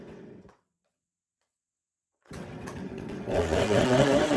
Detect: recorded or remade remade